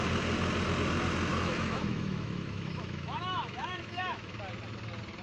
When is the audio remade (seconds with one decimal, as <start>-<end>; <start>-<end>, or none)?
1.3-4.4